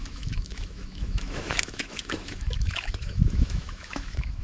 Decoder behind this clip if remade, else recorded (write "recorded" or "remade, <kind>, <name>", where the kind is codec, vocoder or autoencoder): remade, autoencoder, DAC-VAE